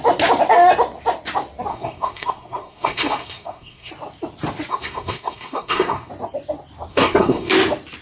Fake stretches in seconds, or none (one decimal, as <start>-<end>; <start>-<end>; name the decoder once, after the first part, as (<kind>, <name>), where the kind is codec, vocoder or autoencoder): 1.7-3.9 (codec, SNAC); 4.7-6.1; 6.9-7.5